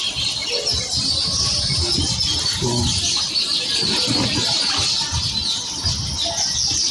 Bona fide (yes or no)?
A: yes